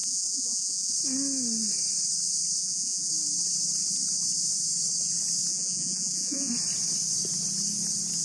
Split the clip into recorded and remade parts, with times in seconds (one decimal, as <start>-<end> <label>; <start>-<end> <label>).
0.0-0.9 remade; 0.9-2.6 recorded; 2.6-3.1 remade; 3.1-5.5 recorded; 5.5-6.5 remade; 6.5-8.2 recorded